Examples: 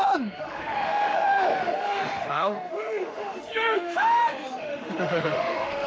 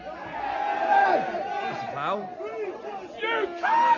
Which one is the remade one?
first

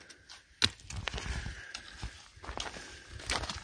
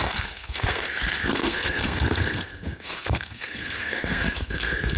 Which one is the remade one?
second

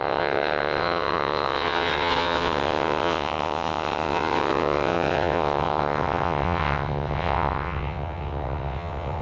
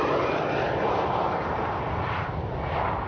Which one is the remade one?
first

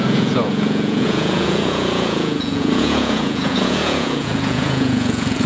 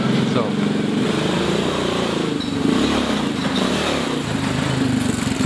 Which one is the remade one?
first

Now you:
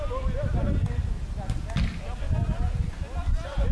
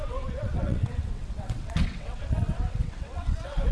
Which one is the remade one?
second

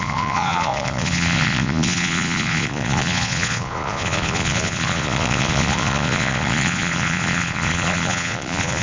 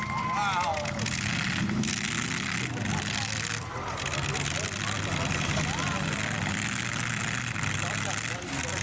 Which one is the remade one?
first